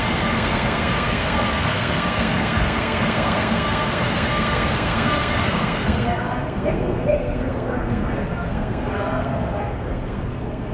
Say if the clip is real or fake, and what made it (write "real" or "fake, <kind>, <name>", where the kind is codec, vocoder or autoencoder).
fake, codec, SNAC